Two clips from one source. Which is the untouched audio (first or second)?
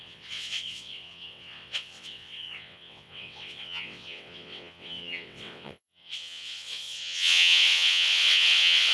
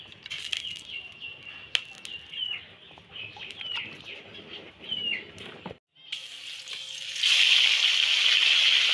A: second